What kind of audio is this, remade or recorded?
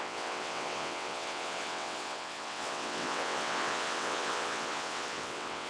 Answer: remade